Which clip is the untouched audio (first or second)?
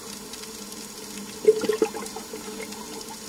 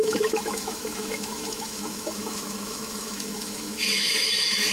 first